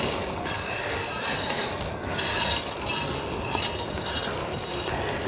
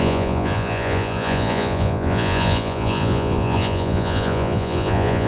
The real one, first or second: first